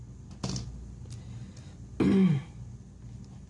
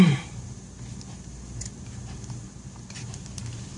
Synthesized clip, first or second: second